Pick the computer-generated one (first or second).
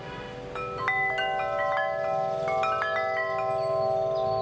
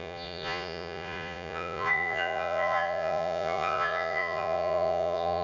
second